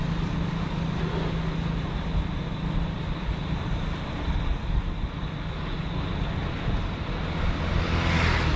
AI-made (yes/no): no